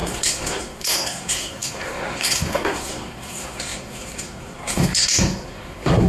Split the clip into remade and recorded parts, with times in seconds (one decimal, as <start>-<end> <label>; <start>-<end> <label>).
0.0-6.1 remade